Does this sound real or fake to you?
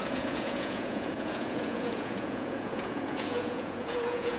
fake